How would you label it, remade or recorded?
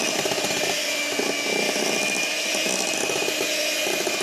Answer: recorded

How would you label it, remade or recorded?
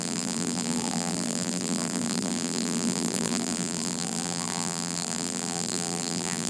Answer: remade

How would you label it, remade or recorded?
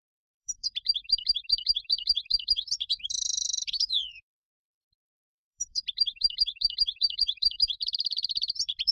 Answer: remade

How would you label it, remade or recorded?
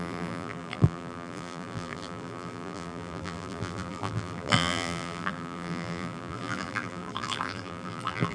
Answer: remade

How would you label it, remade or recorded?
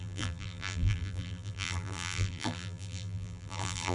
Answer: remade